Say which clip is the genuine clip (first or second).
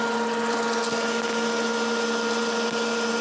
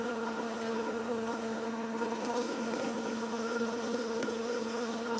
first